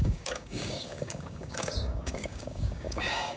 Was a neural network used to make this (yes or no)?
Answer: yes